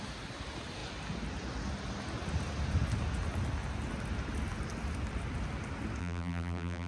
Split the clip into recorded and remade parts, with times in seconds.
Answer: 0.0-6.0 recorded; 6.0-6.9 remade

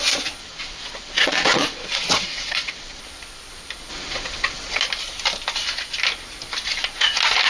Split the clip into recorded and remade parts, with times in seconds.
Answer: 0.0-0.4 recorded; 0.4-3.0 remade; 3.0-3.9 recorded; 3.9-4.8 remade; 4.8-7.5 recorded

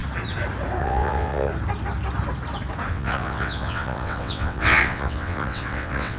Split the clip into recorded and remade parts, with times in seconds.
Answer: 0.0-0.8 recorded; 0.8-1.5 remade; 1.5-2.9 recorded; 2.9-6.2 remade

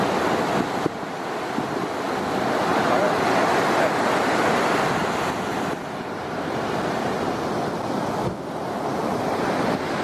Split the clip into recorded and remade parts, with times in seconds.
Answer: 0.0-5.0 recorded; 5.0-6.5 remade; 6.5-10.0 recorded

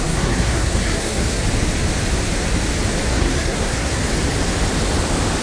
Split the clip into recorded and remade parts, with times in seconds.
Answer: 0.0-1.4 remade; 1.4-3.1 recorded; 3.1-4.0 remade; 4.0-5.4 recorded